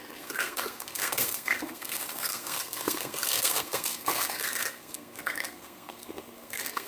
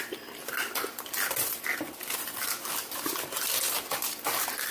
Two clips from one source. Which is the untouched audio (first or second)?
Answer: second